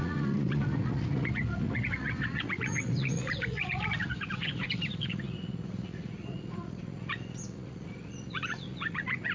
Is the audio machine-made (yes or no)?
yes